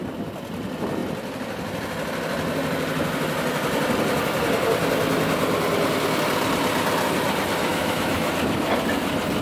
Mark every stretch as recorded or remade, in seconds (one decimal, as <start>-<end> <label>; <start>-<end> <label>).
0.0-7.7 recorded; 7.7-8.3 remade; 8.3-9.4 recorded